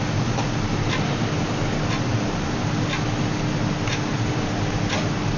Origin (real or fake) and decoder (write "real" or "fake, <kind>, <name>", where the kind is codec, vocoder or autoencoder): real